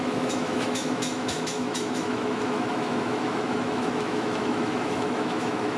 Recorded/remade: remade